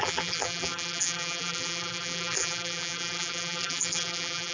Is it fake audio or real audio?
fake